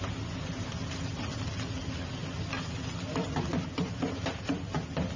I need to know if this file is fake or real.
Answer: real